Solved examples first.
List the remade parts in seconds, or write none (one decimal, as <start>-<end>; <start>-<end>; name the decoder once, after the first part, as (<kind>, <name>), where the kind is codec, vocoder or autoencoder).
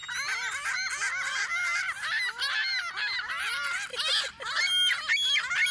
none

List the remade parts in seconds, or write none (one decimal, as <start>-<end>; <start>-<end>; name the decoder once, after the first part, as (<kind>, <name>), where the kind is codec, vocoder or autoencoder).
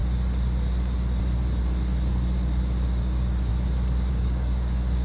3.0-3.5 (codec, DAC); 4.1-5.0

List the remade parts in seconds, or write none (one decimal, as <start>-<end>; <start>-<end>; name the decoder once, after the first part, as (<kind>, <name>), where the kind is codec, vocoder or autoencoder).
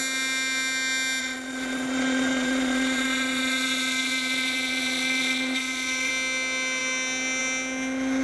1.2-6.1 (vocoder, Vocos)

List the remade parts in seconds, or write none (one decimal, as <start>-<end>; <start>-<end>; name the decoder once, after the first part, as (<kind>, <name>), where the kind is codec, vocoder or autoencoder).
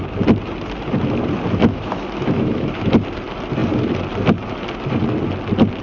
1.6-2.9 (autoencoder, DAC-VAE)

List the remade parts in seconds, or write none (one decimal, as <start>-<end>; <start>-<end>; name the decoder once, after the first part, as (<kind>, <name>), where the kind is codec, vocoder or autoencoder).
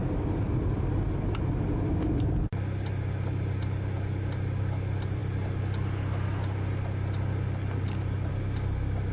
none